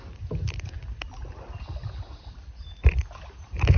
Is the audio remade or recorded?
recorded